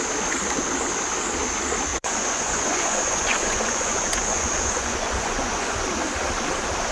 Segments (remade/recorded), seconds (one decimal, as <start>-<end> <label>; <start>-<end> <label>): 0.0-1.9 recorded; 1.9-5.8 remade; 5.8-6.9 recorded